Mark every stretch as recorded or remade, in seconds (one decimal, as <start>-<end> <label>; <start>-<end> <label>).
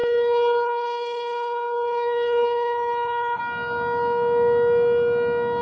0.0-3.4 remade; 3.4-5.6 recorded